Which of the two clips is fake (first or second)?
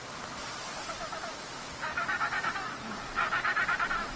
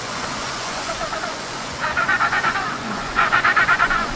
second